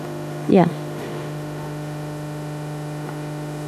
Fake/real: fake